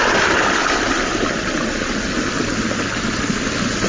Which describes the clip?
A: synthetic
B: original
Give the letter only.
B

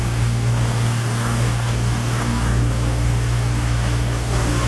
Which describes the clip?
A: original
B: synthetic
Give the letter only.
B